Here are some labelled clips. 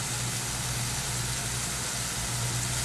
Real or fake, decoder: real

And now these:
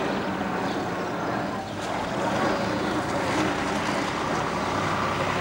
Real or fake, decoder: real